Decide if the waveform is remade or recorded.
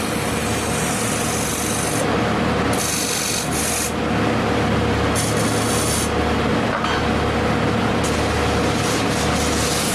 recorded